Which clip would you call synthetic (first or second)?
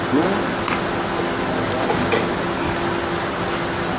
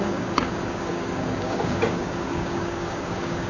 second